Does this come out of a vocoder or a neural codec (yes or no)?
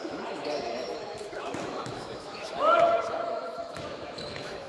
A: yes